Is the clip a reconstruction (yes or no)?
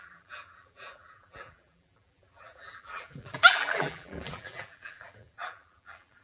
yes